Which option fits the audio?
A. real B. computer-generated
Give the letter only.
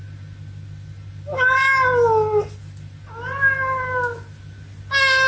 A